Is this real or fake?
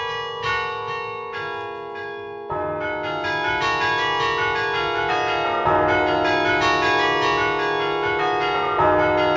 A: real